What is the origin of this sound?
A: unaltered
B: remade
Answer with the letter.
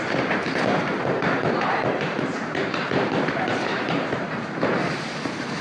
B